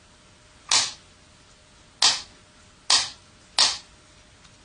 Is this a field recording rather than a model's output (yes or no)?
yes